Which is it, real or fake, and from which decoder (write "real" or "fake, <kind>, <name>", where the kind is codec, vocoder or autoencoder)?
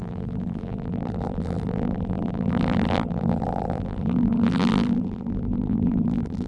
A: fake, vocoder, BigVGAN v2